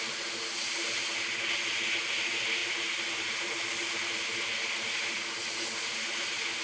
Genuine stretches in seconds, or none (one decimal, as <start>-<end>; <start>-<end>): 0.0-2.6; 3.5-6.6